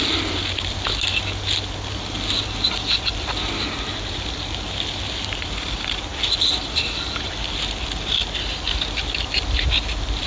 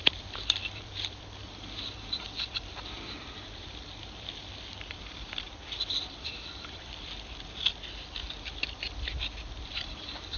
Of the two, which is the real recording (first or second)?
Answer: first